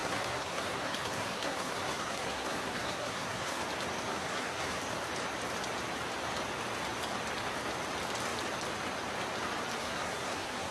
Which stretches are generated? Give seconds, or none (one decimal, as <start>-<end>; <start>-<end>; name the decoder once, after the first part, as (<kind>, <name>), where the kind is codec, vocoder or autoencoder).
0.0-3.6 (codec, SNAC); 4.1-4.8; 9.8-10.7